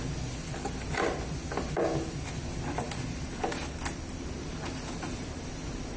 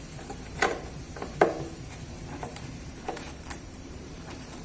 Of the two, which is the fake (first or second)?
second